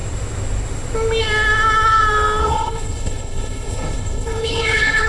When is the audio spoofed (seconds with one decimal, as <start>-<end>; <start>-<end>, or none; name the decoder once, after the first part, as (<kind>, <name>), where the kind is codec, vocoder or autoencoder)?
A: 2.4-5.1 (codec, HILCodec)